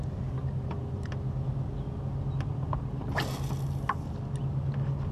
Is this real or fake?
real